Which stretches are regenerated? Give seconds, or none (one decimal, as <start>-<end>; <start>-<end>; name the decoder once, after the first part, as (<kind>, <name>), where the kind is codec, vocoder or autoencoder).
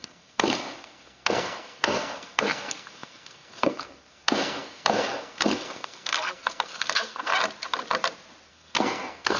0.0-7.3 (codec, SNAC); 8.5-9.4